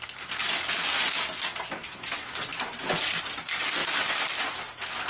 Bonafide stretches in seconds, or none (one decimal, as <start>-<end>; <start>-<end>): 0.0-2.5; 3.2-5.1